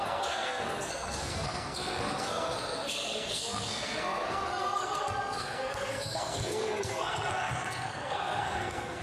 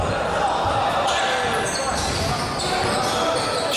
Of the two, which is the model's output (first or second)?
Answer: first